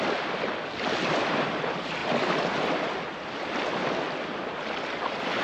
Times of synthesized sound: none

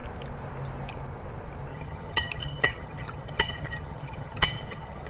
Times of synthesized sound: 1.7-5.1